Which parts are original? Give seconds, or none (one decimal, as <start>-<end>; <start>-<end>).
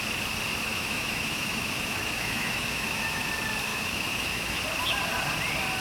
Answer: 0.0-0.7; 3.3-3.7; 4.6-5.8